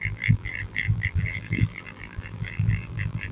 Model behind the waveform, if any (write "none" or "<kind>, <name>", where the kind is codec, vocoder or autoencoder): vocoder, BigVGAN v2